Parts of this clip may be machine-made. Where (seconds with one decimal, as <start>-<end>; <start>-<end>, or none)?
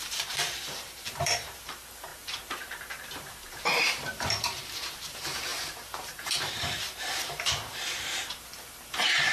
0.0-9.3